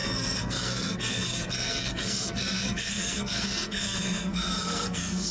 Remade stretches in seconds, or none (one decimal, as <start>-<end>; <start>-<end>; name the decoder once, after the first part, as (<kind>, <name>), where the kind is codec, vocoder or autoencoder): 0.0-5.3 (codec, SNAC)